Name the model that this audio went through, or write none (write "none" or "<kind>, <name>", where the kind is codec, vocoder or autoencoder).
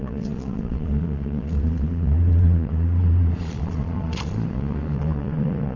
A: vocoder, Vocos